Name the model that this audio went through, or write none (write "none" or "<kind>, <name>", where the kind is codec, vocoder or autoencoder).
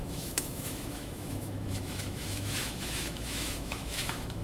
autoencoder, DAC-VAE